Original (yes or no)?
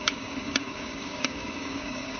no